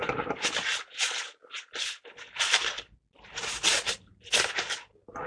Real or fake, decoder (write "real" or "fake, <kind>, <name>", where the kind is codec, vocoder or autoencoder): real